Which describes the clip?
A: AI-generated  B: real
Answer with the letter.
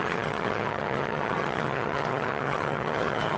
A